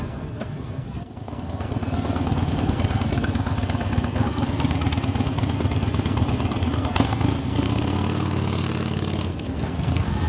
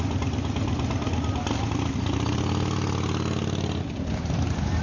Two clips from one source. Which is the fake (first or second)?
first